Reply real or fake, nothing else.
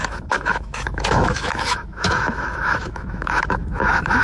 fake